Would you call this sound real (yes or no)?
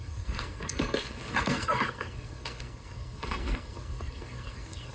no